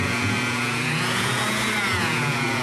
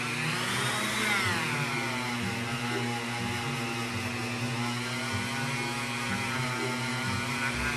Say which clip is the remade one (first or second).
first